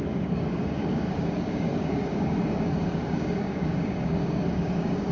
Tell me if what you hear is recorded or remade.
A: remade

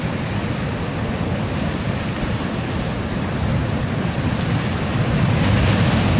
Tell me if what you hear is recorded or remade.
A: recorded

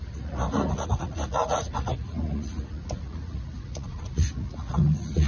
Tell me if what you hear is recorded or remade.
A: remade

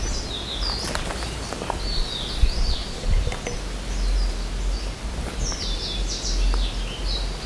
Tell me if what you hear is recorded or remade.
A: recorded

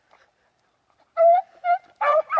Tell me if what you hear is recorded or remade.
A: recorded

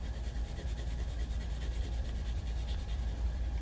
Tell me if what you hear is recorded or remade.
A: remade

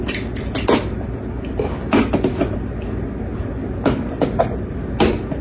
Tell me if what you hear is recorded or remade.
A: recorded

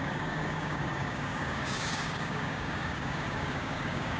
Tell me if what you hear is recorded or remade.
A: remade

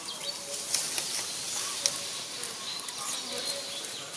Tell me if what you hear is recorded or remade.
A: recorded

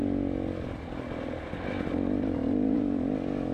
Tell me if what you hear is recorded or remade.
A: recorded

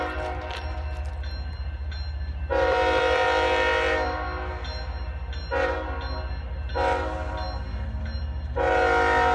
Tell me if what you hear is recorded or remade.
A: recorded